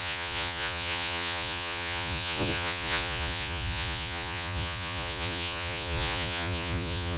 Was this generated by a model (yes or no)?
yes